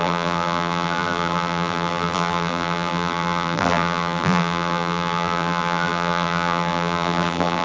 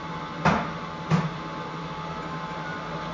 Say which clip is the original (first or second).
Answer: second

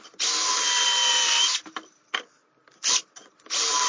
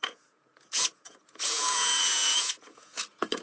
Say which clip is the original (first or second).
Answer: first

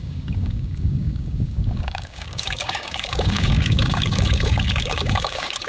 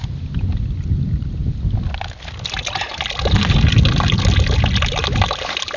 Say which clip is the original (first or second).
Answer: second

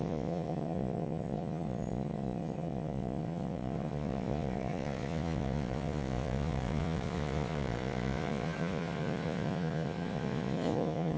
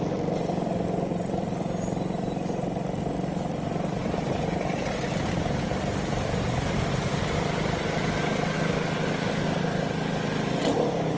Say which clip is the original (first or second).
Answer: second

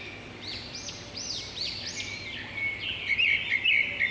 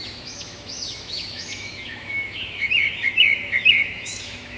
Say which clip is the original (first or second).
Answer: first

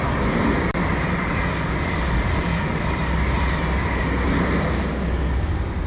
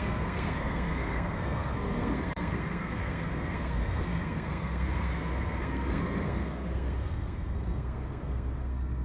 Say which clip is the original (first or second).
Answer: first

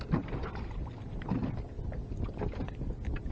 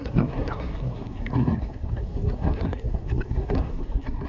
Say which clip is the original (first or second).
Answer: first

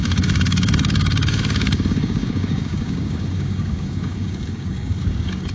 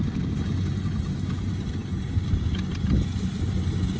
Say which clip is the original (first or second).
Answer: second